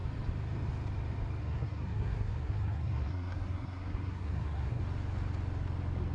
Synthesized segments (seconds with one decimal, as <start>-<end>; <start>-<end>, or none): 1.4-4.8